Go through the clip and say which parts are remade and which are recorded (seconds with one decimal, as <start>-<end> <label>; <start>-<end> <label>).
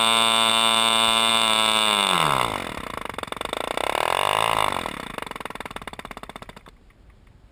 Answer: 0.0-7.5 recorded